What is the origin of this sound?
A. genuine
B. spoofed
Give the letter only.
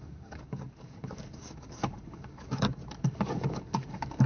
B